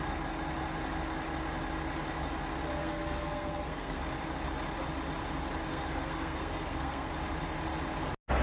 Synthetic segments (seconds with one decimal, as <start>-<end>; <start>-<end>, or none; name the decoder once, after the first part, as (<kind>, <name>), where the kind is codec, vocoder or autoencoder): 2.8-4.0 (codec, SNAC); 5.7-7.1